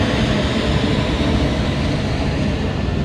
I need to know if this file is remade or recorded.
recorded